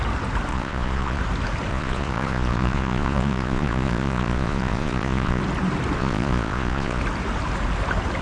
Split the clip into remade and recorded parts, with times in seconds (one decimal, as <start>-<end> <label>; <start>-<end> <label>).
0.0-0.5 recorded; 0.5-1.2 remade; 1.2-1.7 recorded; 1.7-5.4 remade; 5.4-6.0 recorded; 6.0-7.0 remade; 7.0-8.2 recorded